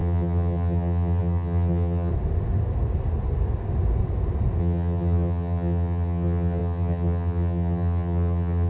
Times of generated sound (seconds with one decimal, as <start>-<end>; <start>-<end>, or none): 0.0-2.1; 4.6-8.7